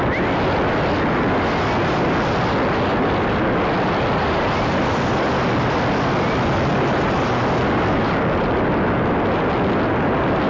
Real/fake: real